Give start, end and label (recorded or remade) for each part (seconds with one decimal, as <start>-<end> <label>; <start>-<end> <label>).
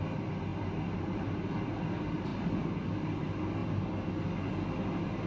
0.0-0.5 recorded; 0.5-1.7 remade; 1.7-5.3 recorded